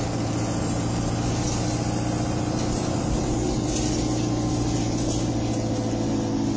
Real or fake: real